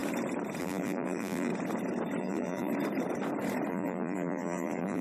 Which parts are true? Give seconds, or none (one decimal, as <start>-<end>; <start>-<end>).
0.0-0.6; 1.5-2.2; 2.7-3.7